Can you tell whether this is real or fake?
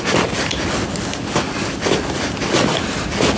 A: real